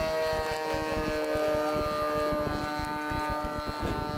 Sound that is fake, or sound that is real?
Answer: real